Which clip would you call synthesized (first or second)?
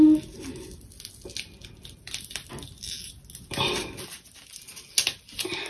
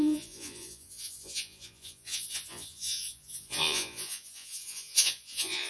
second